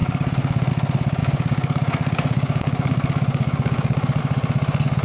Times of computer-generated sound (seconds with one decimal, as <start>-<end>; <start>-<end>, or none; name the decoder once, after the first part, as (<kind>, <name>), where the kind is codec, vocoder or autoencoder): 0.0-0.7 (codec, DAC); 1.2-4.2